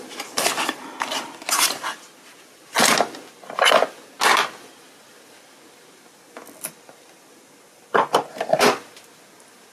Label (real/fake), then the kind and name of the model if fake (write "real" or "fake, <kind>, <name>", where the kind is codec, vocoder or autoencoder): real